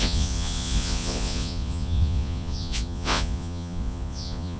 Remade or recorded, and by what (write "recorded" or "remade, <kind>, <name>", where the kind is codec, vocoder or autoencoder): remade, vocoder, Vocos